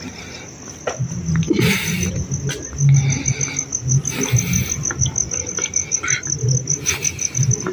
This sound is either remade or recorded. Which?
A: recorded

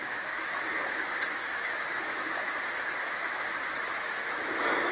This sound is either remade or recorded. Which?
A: remade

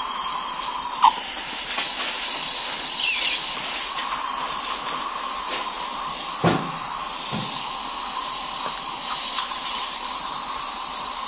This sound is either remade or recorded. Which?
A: recorded